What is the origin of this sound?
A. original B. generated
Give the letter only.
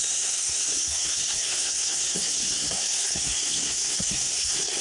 B